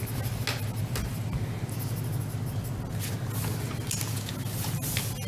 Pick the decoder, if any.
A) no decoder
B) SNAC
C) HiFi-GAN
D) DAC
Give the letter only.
A